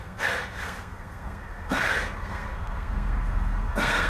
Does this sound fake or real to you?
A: fake